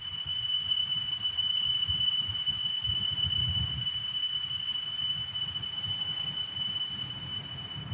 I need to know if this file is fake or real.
real